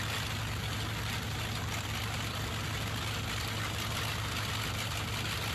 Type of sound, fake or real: real